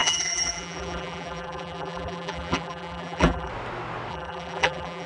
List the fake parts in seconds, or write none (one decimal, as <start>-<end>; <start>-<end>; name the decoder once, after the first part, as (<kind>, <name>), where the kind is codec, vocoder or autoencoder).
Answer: 0.0-3.5 (vocoder, BigVGAN v2); 4.1-5.1